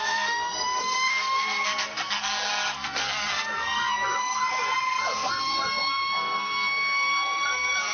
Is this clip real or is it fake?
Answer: fake